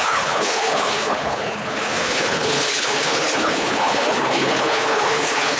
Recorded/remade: remade